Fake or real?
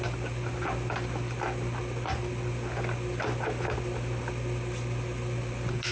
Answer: real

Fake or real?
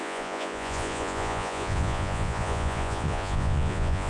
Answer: fake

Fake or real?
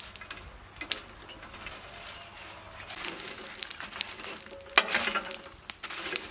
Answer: real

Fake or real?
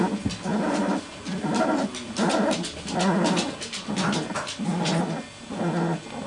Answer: real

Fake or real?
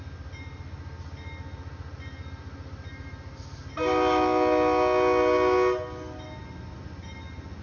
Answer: real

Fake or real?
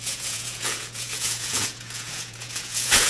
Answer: fake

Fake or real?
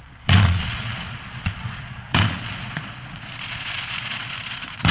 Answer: fake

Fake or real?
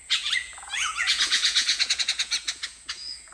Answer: fake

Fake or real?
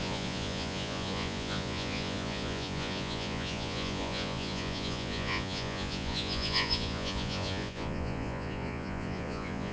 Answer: fake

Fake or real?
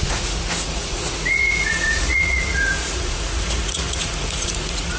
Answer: fake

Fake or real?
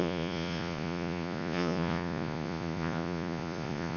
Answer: fake